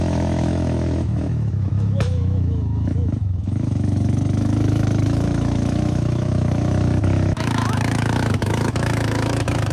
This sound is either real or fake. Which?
fake